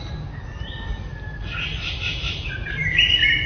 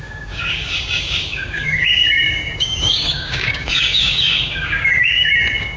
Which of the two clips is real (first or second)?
first